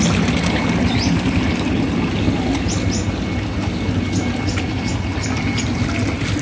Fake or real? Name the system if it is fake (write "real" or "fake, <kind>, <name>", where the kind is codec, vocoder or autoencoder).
real